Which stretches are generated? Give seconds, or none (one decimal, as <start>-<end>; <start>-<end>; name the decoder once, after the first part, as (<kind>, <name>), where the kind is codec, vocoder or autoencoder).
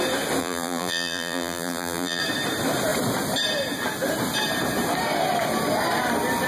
0.4-2.2 (vocoder, BigVGAN v2)